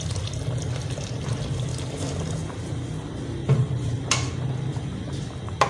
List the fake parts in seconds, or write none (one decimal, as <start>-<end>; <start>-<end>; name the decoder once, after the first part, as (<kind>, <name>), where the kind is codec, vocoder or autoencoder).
none